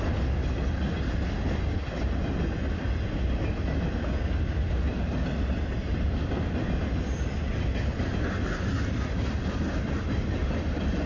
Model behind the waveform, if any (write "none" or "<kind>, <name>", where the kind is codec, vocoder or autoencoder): none